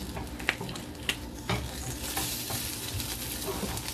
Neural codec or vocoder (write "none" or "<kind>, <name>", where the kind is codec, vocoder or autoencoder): none